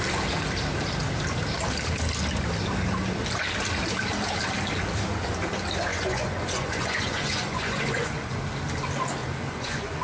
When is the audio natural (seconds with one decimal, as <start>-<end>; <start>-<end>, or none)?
0.0-5.9; 8.4-9.2